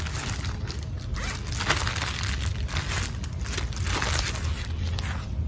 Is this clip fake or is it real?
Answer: real